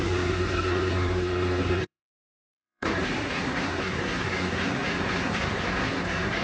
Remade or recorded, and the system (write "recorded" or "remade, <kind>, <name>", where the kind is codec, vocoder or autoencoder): remade, codec, SNAC